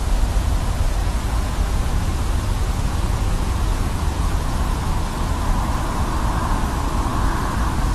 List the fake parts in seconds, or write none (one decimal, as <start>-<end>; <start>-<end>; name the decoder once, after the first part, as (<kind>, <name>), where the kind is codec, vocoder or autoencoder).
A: 1.0-4.8 (vocoder, Vocos)